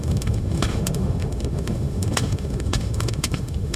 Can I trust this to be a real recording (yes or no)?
no